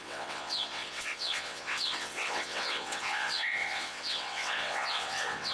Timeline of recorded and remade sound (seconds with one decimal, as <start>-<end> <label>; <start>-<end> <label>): 0.0-5.5 remade

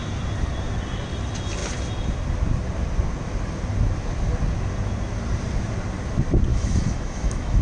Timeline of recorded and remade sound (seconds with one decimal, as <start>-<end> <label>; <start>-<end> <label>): 0.0-6.5 recorded; 6.5-7.6 remade

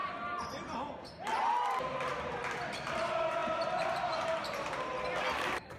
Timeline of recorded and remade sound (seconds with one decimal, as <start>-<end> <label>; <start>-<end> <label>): 0.0-5.8 recorded

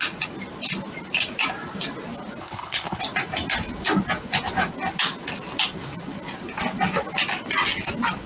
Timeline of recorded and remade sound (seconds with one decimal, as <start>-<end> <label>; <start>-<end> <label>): 0.0-2.4 recorded; 2.4-3.0 remade; 3.0-8.3 recorded

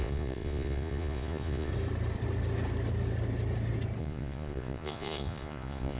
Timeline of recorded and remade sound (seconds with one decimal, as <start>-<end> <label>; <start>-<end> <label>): 0.0-1.7 remade; 1.7-4.0 recorded; 4.0-6.0 remade

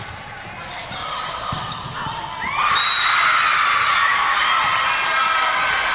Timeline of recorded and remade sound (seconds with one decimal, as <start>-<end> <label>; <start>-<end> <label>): 0.0-4.0 recorded; 4.0-4.6 remade; 4.6-5.9 recorded

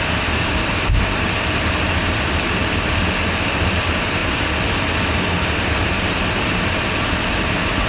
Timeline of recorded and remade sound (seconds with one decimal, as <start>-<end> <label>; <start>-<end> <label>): 0.0-2.6 remade; 2.6-3.6 recorded; 3.6-4.2 remade; 4.2-4.8 recorded; 4.8-7.9 remade